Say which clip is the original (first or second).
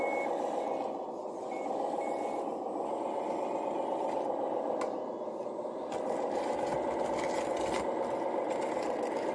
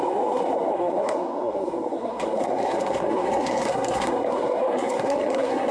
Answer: first